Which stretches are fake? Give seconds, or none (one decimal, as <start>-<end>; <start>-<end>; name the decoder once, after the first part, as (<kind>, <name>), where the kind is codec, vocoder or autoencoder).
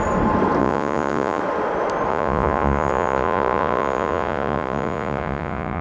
0.6-1.4 (vocoder, Vocos); 2.1-5.8